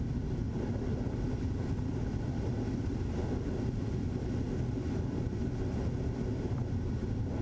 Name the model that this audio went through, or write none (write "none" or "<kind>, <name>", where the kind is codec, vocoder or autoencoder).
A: none